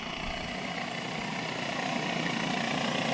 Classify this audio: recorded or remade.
remade